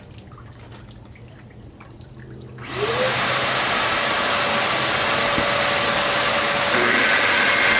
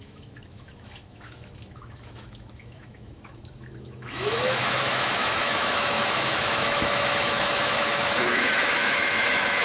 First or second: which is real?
first